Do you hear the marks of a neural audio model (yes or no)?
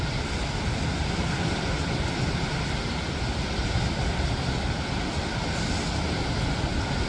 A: no